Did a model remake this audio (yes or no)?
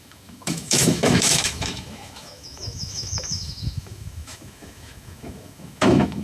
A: yes